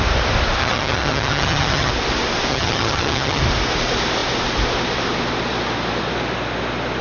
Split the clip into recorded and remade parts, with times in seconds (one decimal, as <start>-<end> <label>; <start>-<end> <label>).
0.0-0.6 recorded; 0.6-1.9 remade; 1.9-2.5 recorded; 2.5-3.4 remade; 3.4-7.0 recorded